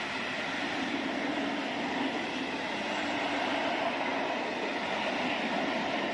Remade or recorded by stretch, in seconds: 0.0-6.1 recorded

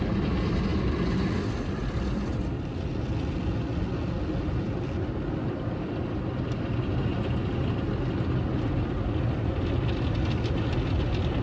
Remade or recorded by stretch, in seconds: 0.0-11.4 recorded

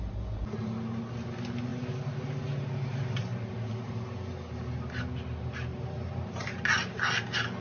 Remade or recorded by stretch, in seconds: 0.0-5.7 recorded; 5.7-6.5 remade; 6.5-7.6 recorded

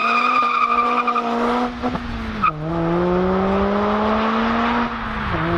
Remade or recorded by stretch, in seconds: 0.0-5.6 recorded

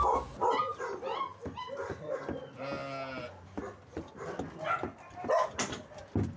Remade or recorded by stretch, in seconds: 0.0-6.4 recorded

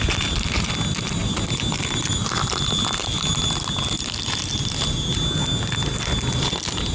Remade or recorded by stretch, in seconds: 0.0-1.2 recorded; 1.2-1.8 remade; 1.8-6.9 recorded

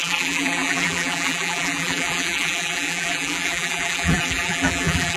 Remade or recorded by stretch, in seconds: 0.0-5.2 remade